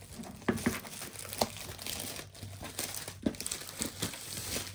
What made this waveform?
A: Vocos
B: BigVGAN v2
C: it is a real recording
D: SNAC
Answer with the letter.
C